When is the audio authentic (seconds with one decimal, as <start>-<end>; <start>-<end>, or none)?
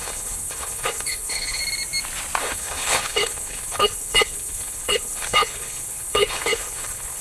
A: 1.6-2.4